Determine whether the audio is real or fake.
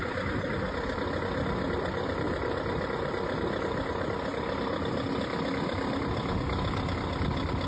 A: real